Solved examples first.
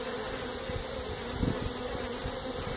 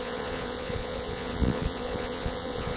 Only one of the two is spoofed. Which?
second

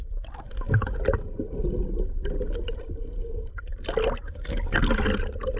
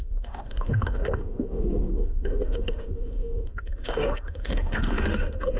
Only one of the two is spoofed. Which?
second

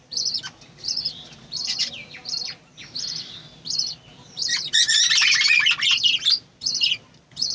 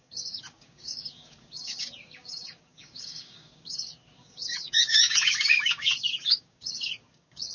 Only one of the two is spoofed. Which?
second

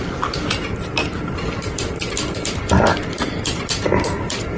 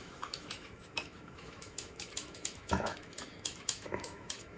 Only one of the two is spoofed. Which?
second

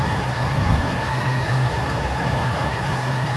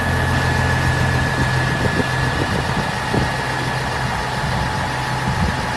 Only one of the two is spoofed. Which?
first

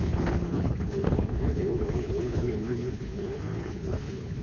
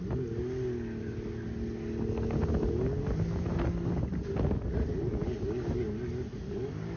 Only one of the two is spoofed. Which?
first